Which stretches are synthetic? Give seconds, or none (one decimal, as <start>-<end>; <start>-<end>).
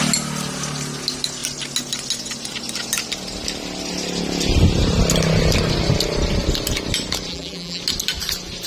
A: 7.3-7.8